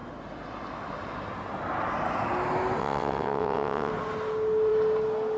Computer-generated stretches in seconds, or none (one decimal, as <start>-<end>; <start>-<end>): 2.8-3.9